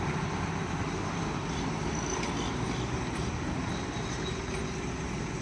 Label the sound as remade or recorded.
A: recorded